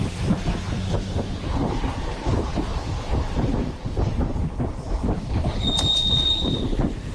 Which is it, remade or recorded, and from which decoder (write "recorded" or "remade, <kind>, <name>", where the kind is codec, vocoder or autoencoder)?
recorded